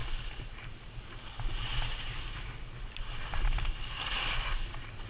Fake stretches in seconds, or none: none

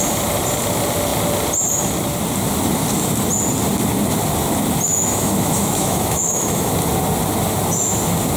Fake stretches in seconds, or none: 4.9-6.7 (autoencoder, DAC-VAE)

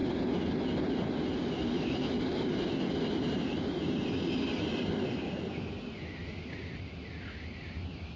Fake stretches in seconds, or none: none

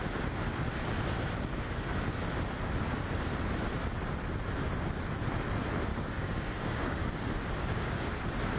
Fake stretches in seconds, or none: 5.9-7.9 (codec, DAC)